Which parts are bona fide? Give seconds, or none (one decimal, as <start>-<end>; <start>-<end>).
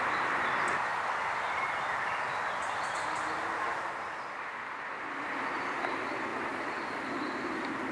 0.0-7.9